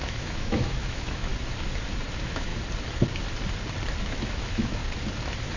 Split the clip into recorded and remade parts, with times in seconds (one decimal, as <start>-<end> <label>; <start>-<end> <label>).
0.0-1.3 remade; 1.3-2.1 recorded; 2.1-2.5 remade; 2.5-4.0 recorded; 4.0-4.8 remade; 4.8-5.6 recorded

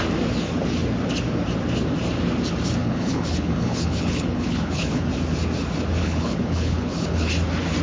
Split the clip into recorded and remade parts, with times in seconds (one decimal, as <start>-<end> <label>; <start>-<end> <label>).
0.0-2.8 recorded; 2.8-5.1 remade; 5.1-6.0 recorded; 6.0-7.3 remade; 7.3-7.8 recorded

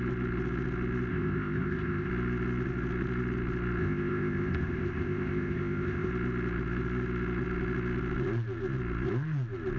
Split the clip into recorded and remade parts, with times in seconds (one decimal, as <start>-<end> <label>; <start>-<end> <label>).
0.0-1.1 recorded; 1.1-2.1 remade; 2.1-3.8 recorded; 3.8-6.1 remade; 6.1-9.8 recorded

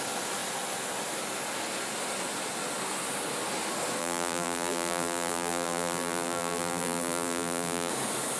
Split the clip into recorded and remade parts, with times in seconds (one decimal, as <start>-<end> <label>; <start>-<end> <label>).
0.0-4.0 recorded; 4.0-7.9 remade; 7.9-8.4 recorded

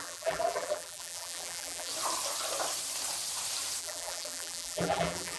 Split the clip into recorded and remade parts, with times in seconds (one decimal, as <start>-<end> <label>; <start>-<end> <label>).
0.0-1.9 remade; 1.9-3.8 recorded; 3.8-5.4 remade

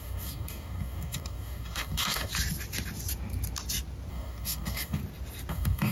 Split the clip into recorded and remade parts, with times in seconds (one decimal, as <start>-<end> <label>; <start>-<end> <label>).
0.0-2.3 remade; 2.3-4.1 recorded; 4.1-5.0 remade; 5.0-5.5 recorded; 5.5-5.9 remade

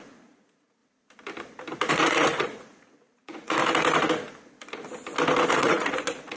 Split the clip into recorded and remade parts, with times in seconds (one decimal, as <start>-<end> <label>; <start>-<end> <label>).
0.0-0.8 remade; 0.8-1.9 recorded; 1.9-3.6 remade; 3.6-5.5 recorded; 5.5-6.4 remade

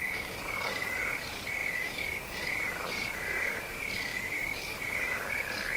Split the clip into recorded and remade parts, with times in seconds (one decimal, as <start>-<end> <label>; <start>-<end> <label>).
0.0-5.8 remade